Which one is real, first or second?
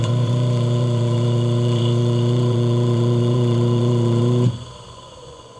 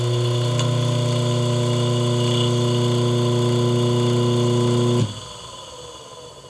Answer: second